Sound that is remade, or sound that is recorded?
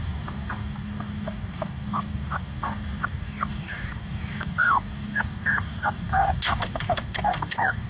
remade